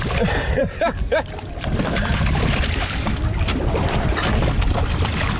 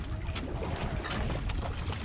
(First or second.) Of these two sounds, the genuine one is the second